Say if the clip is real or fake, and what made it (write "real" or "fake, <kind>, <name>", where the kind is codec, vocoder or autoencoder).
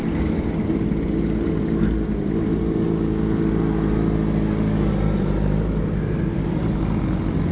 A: real